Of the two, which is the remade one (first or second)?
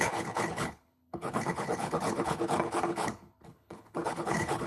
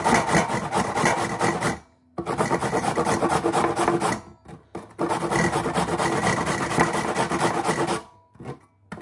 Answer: first